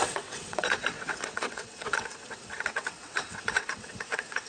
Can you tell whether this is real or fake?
fake